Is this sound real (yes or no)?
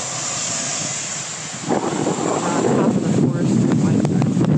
yes